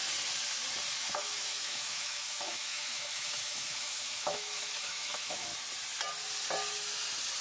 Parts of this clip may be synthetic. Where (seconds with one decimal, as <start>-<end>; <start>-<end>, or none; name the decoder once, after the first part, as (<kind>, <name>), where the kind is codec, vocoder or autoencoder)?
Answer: 1.0-5.5 (autoencoder, DAC-VAE)